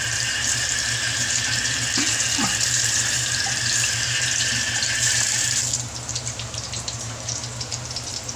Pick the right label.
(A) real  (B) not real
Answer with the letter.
B